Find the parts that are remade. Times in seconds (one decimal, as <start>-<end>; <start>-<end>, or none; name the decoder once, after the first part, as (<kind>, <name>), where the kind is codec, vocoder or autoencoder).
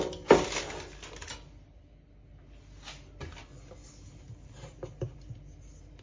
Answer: none